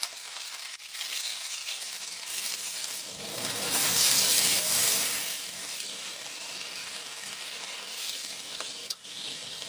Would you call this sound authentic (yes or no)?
no